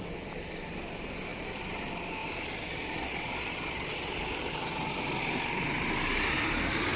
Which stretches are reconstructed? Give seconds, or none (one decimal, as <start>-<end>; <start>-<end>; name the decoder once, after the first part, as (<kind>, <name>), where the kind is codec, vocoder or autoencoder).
1.3-1.8 (vocoder, BigVGAN v2); 2.2-5.2